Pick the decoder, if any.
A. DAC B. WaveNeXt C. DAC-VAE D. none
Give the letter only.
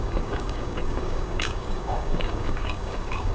A